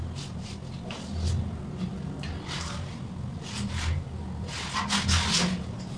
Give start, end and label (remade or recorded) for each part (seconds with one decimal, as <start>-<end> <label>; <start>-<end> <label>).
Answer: 0.0-6.0 recorded